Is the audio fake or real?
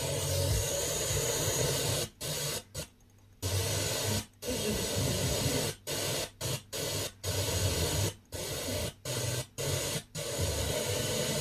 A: real